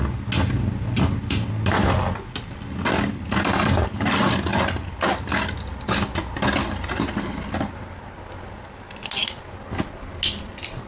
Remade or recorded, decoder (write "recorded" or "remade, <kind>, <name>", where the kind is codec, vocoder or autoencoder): recorded